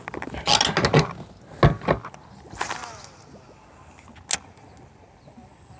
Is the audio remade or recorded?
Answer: recorded